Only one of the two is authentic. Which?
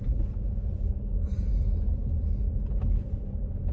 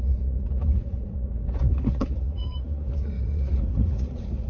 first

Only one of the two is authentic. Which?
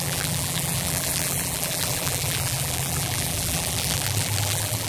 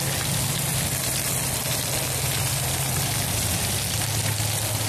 second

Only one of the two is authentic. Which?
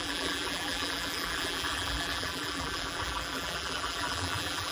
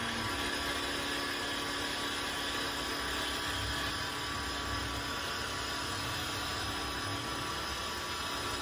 second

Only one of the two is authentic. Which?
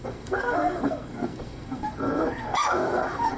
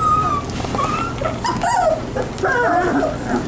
second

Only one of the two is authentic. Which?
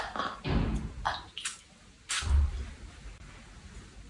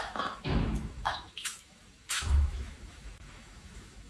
first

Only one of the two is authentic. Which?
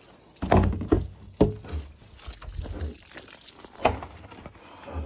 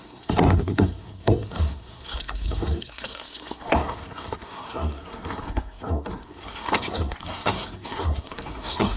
first